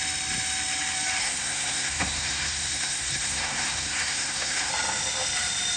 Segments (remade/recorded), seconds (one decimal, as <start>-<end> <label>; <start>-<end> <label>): 0.0-1.2 recorded; 1.2-4.7 remade; 4.7-5.8 recorded

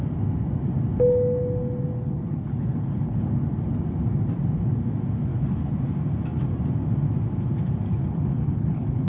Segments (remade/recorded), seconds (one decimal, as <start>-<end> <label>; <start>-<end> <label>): 0.0-1.9 recorded; 1.9-3.3 remade; 3.3-5.3 recorded; 5.3-5.8 remade; 5.8-8.0 recorded; 8.0-9.1 remade

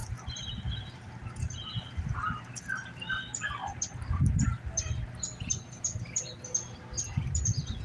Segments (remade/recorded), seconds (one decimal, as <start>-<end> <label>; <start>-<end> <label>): 0.0-7.8 recorded

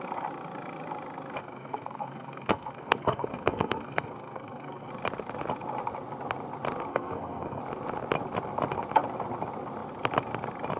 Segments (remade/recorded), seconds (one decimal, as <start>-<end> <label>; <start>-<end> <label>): 0.0-1.4 recorded; 1.4-4.9 remade; 4.9-6.9 recorded; 6.9-7.6 remade; 7.6-10.8 recorded